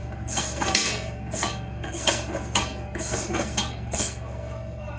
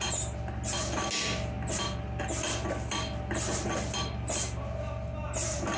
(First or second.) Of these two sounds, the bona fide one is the second